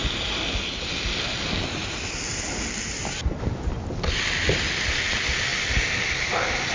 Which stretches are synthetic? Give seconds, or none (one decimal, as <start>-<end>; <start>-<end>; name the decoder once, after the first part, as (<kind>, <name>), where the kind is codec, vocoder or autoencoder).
1.2-6.7 (vocoder, BigVGAN v2)